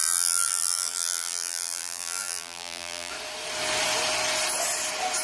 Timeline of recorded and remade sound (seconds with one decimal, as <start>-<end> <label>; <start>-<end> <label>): 0.0-3.1 remade; 3.1-5.2 recorded